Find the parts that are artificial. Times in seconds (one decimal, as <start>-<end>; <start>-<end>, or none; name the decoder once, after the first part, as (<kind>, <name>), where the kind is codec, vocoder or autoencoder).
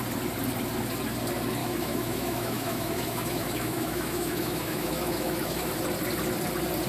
1.6-5.7 (autoencoder, DAC-VAE)